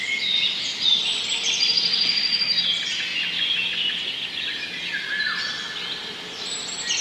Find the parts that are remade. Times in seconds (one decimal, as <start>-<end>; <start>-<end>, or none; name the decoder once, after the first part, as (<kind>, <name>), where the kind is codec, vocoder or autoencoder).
none

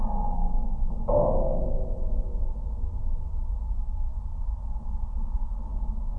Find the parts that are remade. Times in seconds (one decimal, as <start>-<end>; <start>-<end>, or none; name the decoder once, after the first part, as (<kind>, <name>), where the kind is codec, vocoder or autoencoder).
none

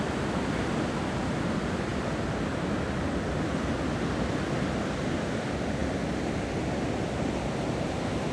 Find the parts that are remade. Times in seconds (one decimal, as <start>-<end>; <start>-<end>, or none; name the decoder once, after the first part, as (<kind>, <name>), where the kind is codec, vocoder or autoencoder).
none

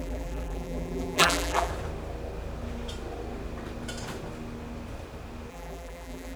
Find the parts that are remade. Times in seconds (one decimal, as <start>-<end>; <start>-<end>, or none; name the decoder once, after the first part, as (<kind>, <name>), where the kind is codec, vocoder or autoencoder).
0.0-1.7 (vocoder, BigVGAN v2); 5.5-6.4

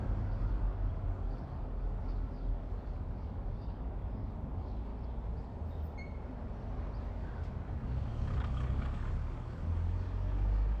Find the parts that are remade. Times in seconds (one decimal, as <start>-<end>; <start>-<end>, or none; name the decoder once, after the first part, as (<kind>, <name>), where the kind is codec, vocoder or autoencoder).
0.0-4.9 (codec, DAC); 7.0-10.8